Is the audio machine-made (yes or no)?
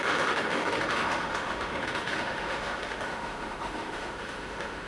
yes